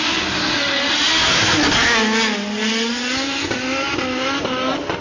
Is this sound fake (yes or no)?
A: no